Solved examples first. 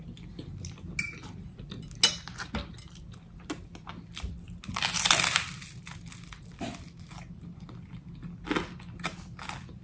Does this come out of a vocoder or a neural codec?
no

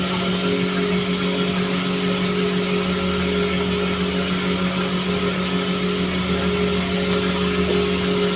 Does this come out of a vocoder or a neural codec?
no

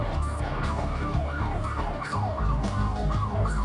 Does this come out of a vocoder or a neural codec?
yes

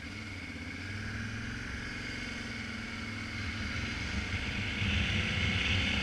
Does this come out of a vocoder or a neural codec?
no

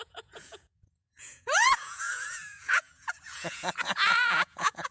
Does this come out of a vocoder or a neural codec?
yes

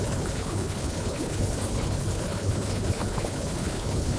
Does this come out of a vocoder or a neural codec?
yes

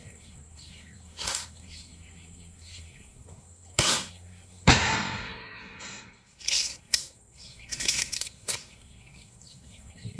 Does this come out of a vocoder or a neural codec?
yes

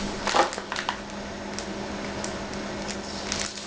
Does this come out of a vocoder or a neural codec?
no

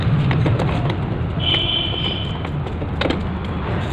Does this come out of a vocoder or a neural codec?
no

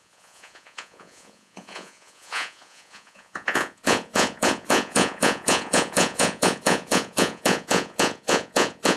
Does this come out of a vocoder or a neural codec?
yes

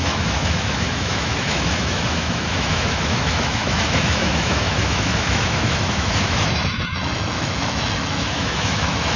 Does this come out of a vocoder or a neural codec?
yes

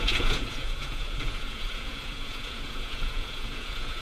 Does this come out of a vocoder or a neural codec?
yes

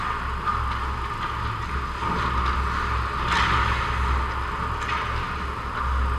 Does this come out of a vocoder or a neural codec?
no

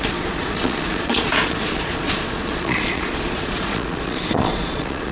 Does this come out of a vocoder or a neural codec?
yes